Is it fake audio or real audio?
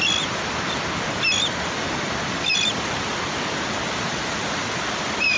real